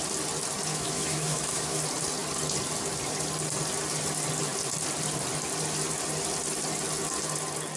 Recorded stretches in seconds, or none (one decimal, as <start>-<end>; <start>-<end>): 0.0-0.7; 1.8-7.8